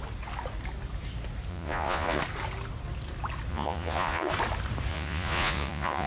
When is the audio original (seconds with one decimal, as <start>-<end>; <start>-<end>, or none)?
0.0-1.5; 2.2-3.5; 4.3-4.9